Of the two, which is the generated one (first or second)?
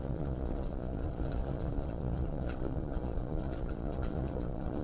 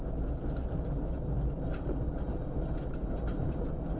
first